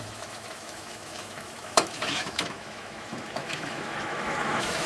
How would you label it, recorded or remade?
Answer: remade